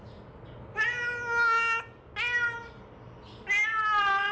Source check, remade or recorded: recorded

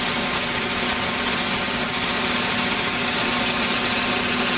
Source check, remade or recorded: recorded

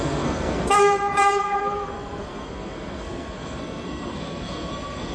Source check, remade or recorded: remade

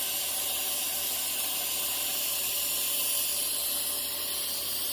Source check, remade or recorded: recorded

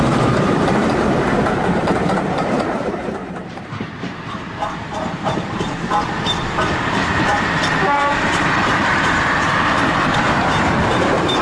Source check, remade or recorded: remade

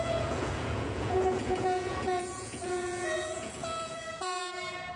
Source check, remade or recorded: remade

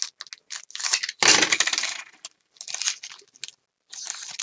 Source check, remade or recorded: recorded